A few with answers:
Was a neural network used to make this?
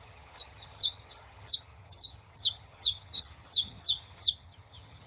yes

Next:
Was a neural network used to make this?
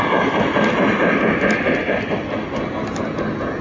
no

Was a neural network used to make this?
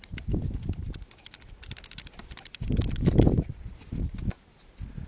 no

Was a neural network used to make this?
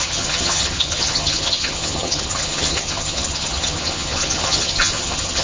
yes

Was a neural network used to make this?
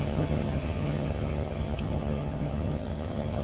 yes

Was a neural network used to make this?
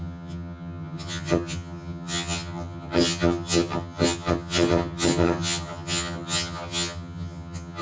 yes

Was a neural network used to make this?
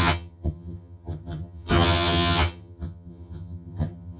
yes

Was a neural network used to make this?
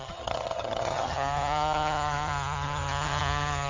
yes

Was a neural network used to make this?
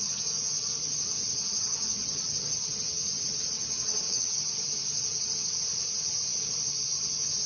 yes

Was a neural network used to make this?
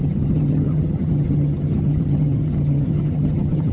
yes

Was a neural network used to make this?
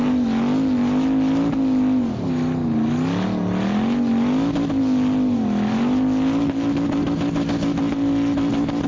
no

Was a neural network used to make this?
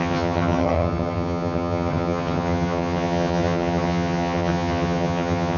yes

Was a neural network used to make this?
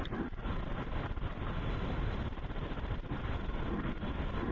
no